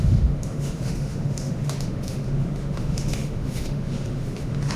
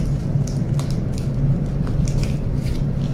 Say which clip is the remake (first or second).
first